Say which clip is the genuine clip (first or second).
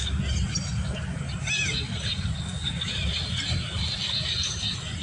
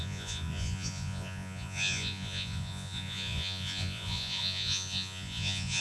first